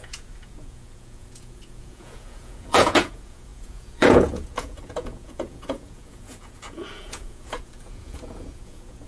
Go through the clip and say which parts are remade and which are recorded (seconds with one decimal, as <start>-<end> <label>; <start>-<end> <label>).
0.0-9.1 remade